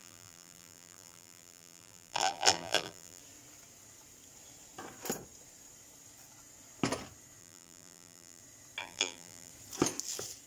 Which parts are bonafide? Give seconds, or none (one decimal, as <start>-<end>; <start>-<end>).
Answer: 3.2-7.4; 8.4-8.8; 9.5-10.5